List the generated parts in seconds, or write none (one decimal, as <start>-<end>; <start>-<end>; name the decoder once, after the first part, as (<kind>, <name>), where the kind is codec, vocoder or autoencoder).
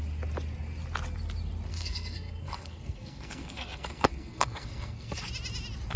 1.7-5.3 (codec, SNAC)